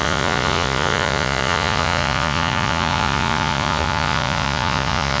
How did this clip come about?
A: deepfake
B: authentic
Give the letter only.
A